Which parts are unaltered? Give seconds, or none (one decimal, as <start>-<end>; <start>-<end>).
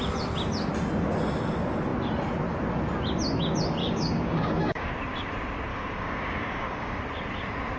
0.0-3.8; 4.9-5.7; 7.0-7.8